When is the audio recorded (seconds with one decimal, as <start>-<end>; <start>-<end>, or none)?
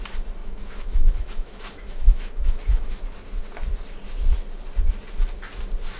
0.0-0.4; 3.0-6.0